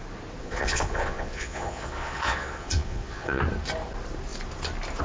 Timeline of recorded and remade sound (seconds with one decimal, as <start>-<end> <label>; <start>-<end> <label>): 0.0-0.4 recorded; 0.4-3.4 remade; 3.4-5.0 recorded